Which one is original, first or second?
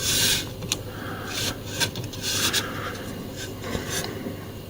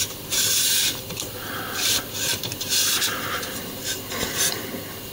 first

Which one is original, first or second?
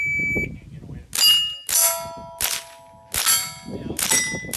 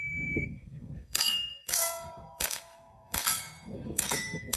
first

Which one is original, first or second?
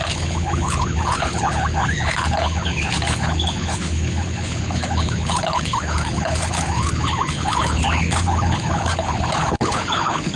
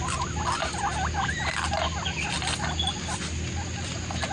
second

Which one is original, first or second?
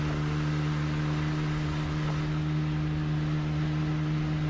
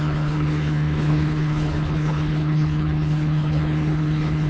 first